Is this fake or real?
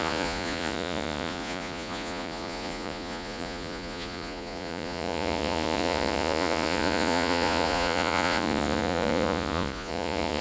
fake